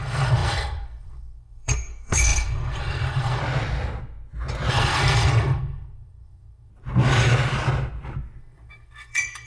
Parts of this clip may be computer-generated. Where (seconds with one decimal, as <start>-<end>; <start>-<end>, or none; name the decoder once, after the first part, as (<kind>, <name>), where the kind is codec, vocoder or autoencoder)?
0.0-3.4 (codec, SNAC); 4.7-6.7; 8.4-9.5